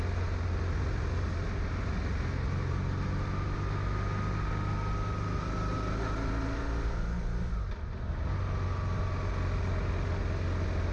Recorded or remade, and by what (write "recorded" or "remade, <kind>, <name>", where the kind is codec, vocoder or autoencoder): recorded